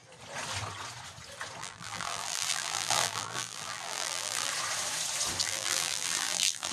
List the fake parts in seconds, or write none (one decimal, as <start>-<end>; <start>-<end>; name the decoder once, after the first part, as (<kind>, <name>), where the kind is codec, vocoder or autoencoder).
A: 1.6-4.5 (vocoder, BigVGAN v2); 5.4-6.7